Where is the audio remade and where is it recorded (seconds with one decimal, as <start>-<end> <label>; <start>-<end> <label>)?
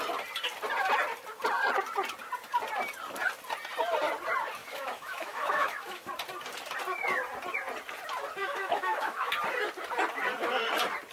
0.0-4.6 recorded; 4.6-6.1 remade; 6.1-8.4 recorded; 8.4-9.3 remade; 9.3-11.1 recorded